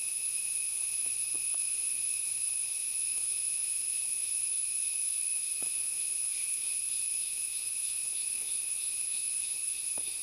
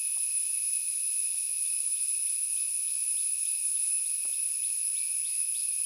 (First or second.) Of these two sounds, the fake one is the first